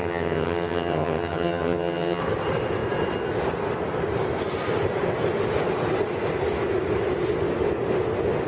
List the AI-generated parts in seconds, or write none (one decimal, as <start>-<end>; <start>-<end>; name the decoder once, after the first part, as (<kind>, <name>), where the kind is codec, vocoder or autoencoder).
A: 0.0-2.2 (vocoder, HiFi-GAN)